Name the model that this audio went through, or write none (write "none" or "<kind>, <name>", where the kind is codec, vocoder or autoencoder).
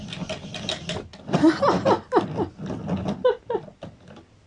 none